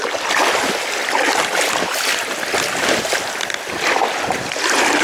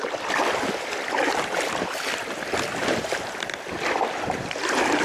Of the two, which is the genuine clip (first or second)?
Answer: first